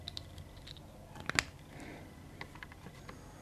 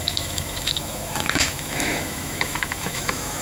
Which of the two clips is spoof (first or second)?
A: second